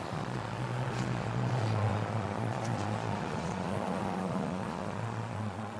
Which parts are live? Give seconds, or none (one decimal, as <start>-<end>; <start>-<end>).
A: none